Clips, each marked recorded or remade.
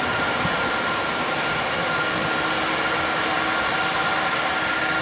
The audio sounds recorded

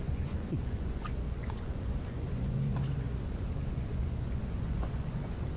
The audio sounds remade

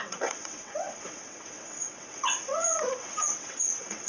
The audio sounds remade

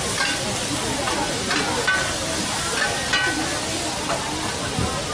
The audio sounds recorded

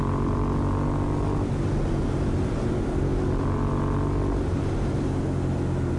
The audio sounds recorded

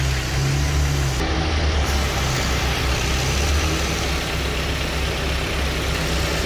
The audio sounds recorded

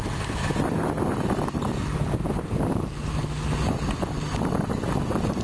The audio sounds recorded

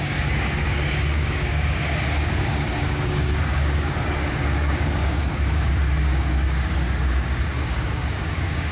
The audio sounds remade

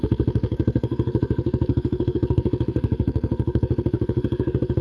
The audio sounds remade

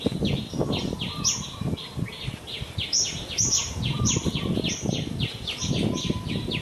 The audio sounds remade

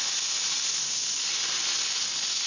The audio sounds recorded